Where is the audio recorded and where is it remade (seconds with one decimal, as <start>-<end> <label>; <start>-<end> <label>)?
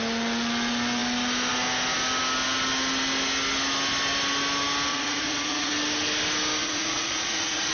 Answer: 0.0-4.9 recorded; 4.9-5.7 remade; 5.7-6.6 recorded; 6.6-7.7 remade